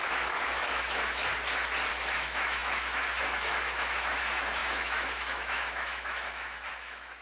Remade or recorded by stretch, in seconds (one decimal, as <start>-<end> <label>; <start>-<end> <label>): 0.0-1.3 remade; 1.3-1.9 recorded; 1.9-7.2 remade